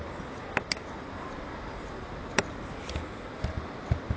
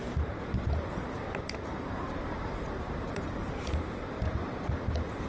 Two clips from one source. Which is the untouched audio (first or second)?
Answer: first